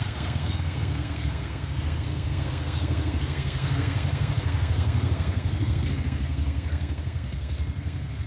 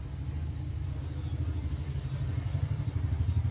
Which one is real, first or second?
second